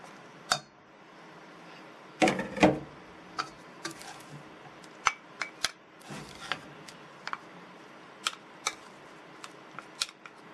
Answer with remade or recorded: recorded